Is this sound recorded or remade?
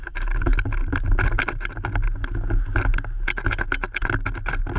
recorded